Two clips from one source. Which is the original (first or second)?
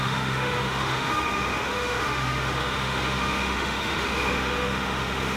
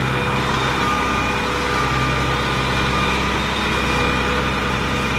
second